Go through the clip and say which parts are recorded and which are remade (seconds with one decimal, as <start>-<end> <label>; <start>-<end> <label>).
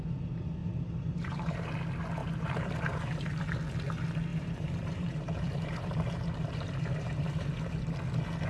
0.0-0.6 recorded; 0.6-1.8 remade; 1.8-2.2 recorded; 2.2-3.4 remade; 3.4-4.3 recorded; 4.3-7.5 remade; 7.5-8.5 recorded